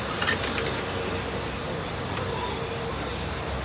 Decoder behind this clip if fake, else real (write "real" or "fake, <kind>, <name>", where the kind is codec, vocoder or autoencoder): real